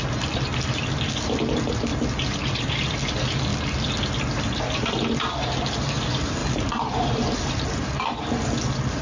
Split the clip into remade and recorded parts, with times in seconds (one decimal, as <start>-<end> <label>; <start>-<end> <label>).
0.0-9.0 recorded